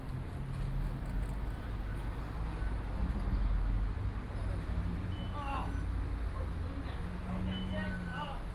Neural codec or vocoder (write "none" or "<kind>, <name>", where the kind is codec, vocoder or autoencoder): none